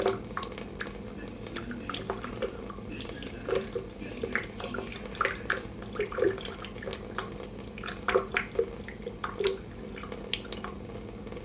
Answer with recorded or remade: recorded